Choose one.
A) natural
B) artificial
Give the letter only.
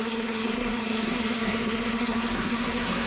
B